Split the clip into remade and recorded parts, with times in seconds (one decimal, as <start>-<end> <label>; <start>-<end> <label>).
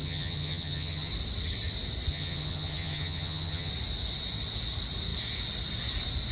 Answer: 0.0-1.1 remade; 1.1-2.1 recorded; 2.1-3.7 remade; 3.7-6.3 recorded